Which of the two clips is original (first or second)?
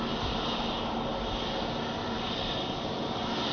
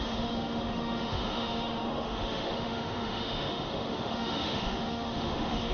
first